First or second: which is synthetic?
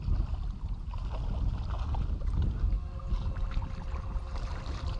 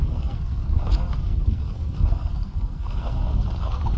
second